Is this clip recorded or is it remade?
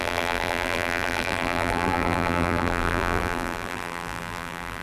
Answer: remade